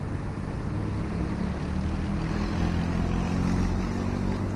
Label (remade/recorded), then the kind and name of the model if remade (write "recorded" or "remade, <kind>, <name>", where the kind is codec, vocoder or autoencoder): recorded